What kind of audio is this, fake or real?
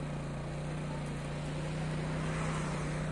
real